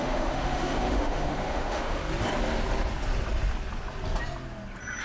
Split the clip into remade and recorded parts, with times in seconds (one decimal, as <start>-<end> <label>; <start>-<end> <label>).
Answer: 0.0-2.0 remade; 2.0-5.0 recorded

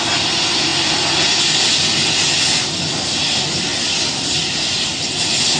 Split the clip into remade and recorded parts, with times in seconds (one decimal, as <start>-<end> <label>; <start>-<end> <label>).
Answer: 0.0-5.6 recorded

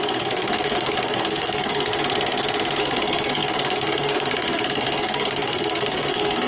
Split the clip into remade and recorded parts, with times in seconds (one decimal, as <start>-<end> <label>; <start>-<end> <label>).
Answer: 0.0-1.9 remade; 1.9-2.8 recorded; 2.8-6.5 remade